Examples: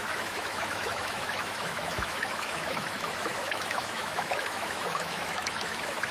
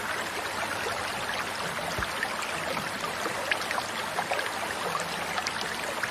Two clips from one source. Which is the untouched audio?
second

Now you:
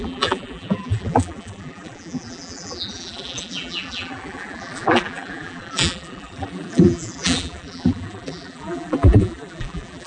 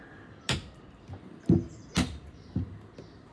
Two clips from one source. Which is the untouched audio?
second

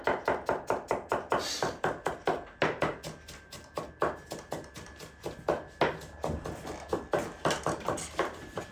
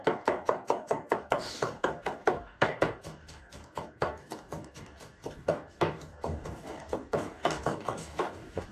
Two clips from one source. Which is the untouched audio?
first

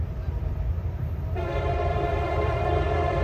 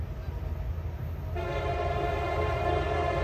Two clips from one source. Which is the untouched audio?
second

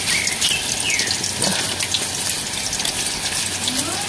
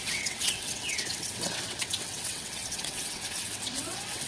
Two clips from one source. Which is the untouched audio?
first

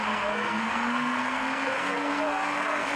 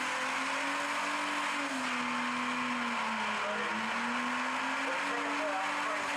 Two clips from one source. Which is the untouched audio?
second